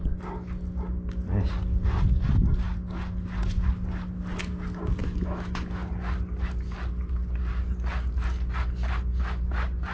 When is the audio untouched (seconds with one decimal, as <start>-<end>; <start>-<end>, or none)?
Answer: 0.0-5.0; 5.9-9.9